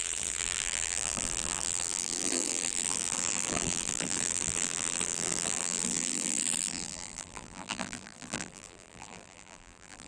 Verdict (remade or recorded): remade